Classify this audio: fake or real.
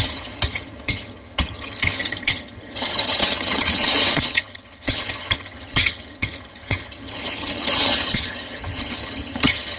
fake